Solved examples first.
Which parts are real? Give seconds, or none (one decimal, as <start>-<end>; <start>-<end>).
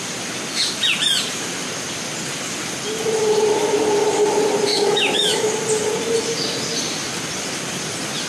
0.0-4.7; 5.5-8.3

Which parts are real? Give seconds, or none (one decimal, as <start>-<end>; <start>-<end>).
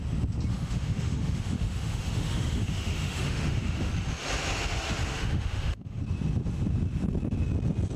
0.0-0.5; 3.9-5.1; 6.0-8.0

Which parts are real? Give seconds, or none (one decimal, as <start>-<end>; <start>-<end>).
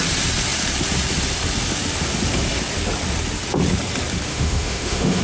0.0-4.3